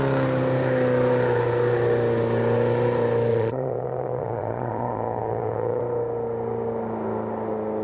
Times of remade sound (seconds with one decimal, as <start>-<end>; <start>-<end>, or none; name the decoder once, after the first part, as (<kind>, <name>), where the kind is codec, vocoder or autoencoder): 3.3-5.8 (vocoder, Vocos)